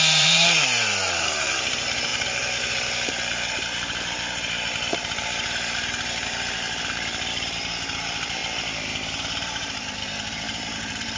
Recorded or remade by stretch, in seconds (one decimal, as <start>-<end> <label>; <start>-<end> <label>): 0.0-11.2 remade

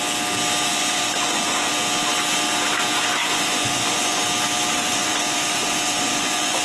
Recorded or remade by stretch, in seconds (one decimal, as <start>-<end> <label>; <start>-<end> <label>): 0.0-0.7 recorded; 0.7-1.7 remade; 1.7-3.2 recorded; 3.2-4.2 remade; 4.2-4.8 recorded; 4.8-6.6 remade

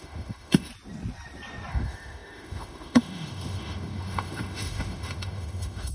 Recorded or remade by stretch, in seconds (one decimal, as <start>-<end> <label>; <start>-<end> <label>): 0.0-0.7 remade; 0.7-1.7 recorded; 1.7-5.9 remade

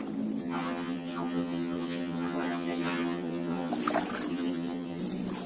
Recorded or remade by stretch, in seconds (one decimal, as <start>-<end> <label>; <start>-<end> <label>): 0.0-0.4 recorded; 0.4-3.7 remade; 3.7-4.3 recorded; 4.3-5.0 remade; 5.0-5.5 recorded

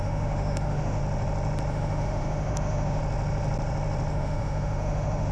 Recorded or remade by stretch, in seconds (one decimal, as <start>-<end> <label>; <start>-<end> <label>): 0.0-1.0 remade; 1.0-1.7 recorded; 1.7-3.0 remade; 3.0-4.1 recorded; 4.1-5.3 remade

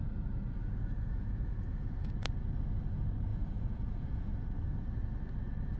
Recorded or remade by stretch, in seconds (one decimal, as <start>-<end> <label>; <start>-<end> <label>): 0.0-0.6 recorded; 0.6-2.1 remade; 2.1-3.3 recorded; 3.3-4.3 remade; 4.3-5.8 recorded